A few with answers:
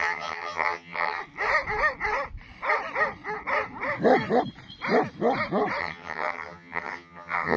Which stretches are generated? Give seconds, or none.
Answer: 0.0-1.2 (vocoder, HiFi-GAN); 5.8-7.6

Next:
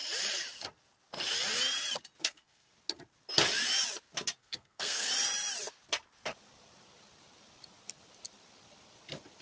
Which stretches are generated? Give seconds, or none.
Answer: 2.2-2.7 (codec, SNAC); 4.4-5.1

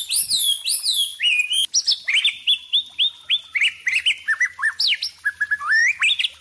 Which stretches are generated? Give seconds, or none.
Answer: none

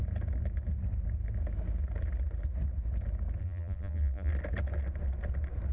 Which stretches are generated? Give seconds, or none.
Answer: 3.4-4.3 (vocoder, BigVGAN v2)

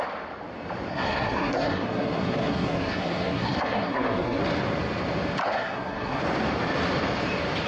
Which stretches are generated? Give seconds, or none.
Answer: 0.9-4.4 (codec, SNAC); 5.4-6.2

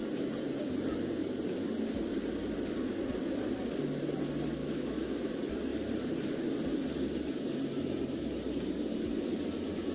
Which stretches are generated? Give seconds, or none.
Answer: 4.6-5.3 (autoencoder, DAC-VAE)